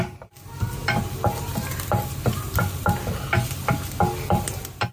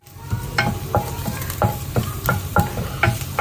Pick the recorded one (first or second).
first